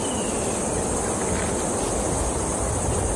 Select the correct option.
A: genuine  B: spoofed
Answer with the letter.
A